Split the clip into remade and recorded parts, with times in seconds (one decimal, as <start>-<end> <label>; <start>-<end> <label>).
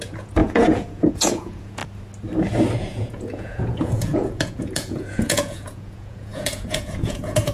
0.0-1.8 remade; 1.8-2.8 recorded; 2.8-7.5 remade